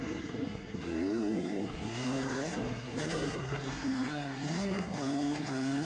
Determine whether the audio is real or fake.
fake